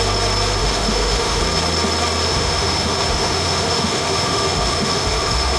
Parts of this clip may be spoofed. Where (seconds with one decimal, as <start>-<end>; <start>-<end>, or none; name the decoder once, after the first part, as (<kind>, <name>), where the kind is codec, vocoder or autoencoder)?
0.6-1.4 (autoencoder, DAC-VAE); 2.3-5.6